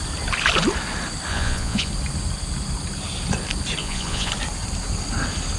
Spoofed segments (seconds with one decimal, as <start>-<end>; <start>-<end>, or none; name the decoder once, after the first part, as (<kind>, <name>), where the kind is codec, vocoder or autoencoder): 1.3-1.9 (vocoder, Vocos); 3.8-4.3